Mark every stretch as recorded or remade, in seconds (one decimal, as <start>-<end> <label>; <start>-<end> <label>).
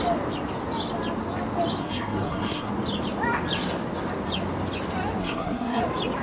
0.0-1.8 recorded; 1.8-2.7 remade; 2.7-5.2 recorded; 5.2-5.8 remade; 5.8-6.2 recorded